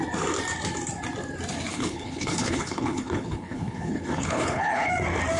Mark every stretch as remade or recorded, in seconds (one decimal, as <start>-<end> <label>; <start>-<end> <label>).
0.0-1.7 recorded; 1.7-4.9 remade; 4.9-5.4 recorded